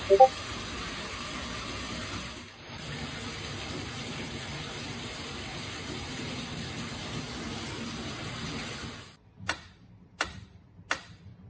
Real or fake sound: real